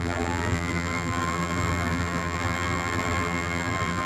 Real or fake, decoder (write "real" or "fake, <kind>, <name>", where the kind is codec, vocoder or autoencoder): fake, vocoder, BigVGAN v2